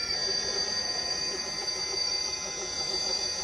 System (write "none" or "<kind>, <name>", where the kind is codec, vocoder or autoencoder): none